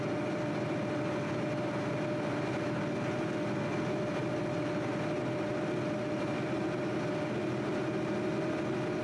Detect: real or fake real